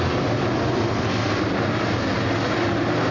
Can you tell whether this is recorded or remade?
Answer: recorded